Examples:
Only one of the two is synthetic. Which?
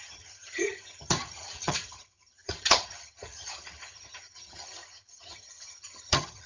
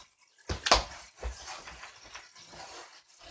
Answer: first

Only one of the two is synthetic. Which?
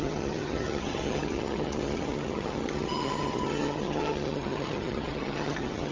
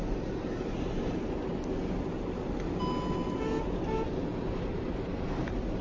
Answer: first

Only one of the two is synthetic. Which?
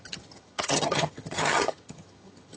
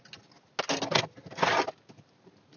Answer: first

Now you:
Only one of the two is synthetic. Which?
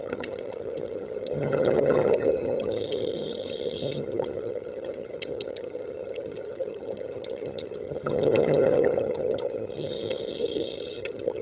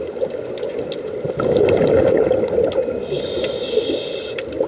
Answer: first